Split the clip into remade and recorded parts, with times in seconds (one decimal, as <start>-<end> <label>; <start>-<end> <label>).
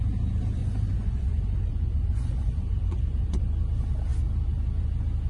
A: 0.0-0.6 recorded; 0.6-3.4 remade; 3.4-5.3 recorded